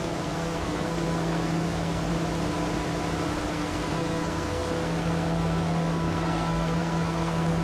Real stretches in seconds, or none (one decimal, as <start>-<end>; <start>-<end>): 2.1-3.5